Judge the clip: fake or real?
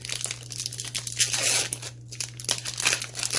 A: real